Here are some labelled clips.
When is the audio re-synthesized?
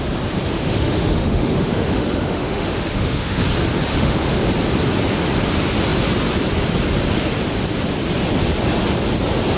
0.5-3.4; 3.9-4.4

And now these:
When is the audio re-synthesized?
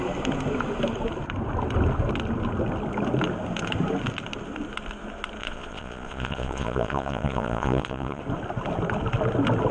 5.4-8.2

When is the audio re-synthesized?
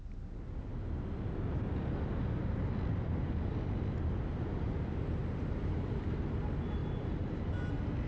none